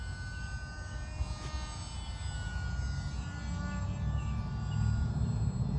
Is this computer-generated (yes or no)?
no